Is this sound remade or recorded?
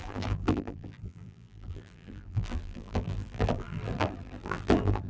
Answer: remade